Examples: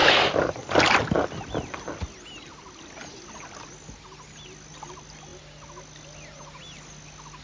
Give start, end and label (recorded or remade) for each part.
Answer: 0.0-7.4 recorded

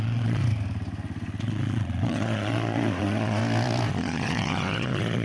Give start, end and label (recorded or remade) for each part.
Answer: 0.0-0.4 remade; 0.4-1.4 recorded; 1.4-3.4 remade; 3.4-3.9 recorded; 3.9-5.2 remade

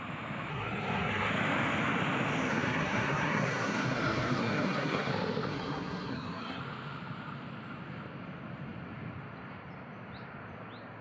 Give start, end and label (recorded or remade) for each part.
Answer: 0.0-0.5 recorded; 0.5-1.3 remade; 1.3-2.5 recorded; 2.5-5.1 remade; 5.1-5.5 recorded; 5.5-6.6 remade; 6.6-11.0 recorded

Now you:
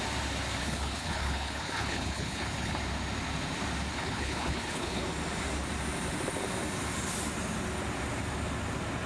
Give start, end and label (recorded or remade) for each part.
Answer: 0.0-0.6 recorded; 0.6-2.8 remade; 2.8-3.9 recorded; 3.9-5.0 remade; 5.0-9.1 recorded